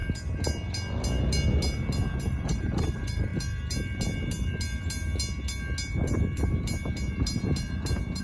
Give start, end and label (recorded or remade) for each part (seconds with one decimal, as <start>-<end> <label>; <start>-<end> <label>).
0.0-2.2 recorded; 2.2-3.3 remade; 3.3-8.2 recorded